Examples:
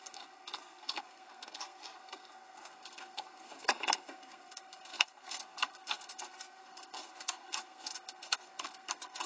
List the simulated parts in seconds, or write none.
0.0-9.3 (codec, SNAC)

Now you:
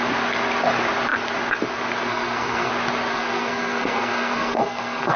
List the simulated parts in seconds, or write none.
2.1-2.7 (codec, SNAC); 3.1-5.2

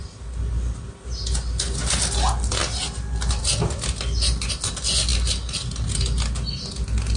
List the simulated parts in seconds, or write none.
none

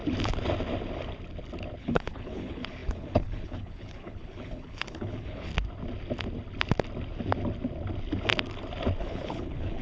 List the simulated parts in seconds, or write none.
1.8-5.5 (codec, HILCodec); 9.0-9.8

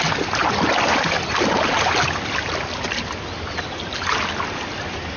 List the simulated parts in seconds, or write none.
none

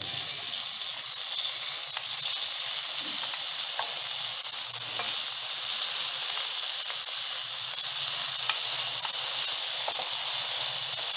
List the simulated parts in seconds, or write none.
none

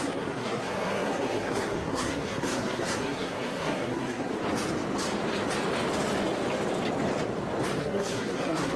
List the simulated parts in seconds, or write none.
0.0-4.3 (codec, SNAC); 7.8-8.8